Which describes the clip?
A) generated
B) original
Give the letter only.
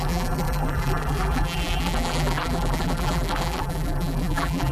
A